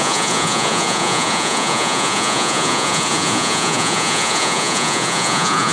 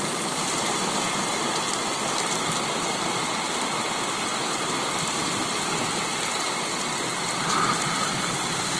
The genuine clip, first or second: second